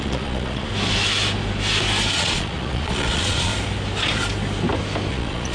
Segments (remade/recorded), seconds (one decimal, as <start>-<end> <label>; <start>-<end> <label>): 0.0-0.7 remade; 0.7-2.1 recorded; 2.1-3.5 remade; 3.5-5.1 recorded; 5.1-5.5 remade